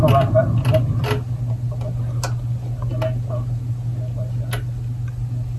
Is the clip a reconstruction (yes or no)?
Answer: no